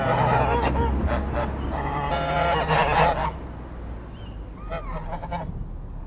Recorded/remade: recorded